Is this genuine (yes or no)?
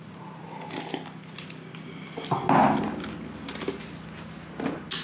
yes